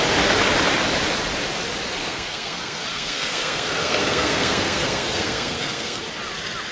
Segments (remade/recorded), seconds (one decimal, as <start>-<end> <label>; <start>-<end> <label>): 0.0-2.0 recorded; 2.0-6.0 remade; 6.0-6.7 recorded